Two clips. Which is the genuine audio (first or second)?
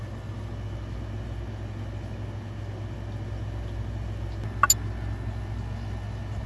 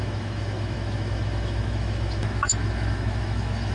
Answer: first